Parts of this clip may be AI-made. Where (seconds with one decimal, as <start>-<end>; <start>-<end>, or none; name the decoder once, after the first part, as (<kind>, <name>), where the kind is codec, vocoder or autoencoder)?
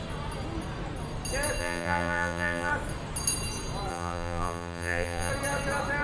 1.6-2.7 (vocoder, BigVGAN v2); 3.9-5.3